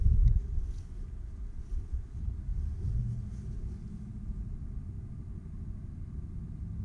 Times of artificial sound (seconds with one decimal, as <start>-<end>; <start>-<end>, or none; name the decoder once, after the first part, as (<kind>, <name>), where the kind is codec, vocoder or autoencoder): 0.0-2.5 (vocoder, BigVGAN v2); 4.1-6.8